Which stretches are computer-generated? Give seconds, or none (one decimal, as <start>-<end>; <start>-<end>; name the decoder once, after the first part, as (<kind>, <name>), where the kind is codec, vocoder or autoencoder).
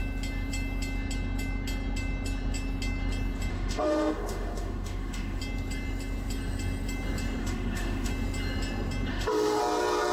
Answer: 3.5-5.4 (autoencoder, DAC-VAE); 7.4-8.1; 9.1-9.6